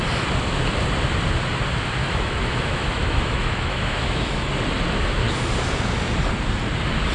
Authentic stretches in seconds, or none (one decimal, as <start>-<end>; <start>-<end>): 0.0-2.0; 4.5-7.1